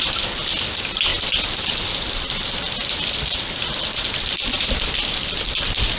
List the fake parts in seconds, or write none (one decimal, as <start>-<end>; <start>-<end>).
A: 0.0-6.0